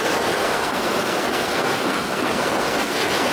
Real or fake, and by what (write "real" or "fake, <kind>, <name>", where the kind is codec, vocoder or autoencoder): fake, codec, SNAC